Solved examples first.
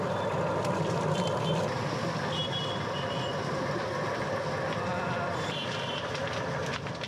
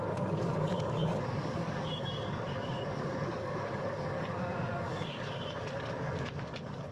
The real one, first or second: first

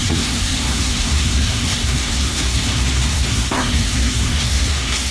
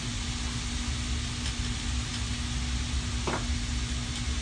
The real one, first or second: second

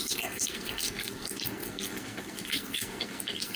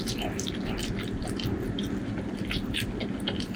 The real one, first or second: second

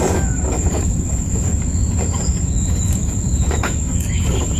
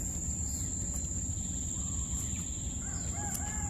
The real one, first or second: second